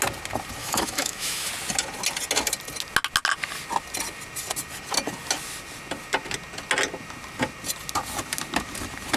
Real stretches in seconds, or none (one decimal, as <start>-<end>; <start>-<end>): 0.0-0.6; 1.5-9.2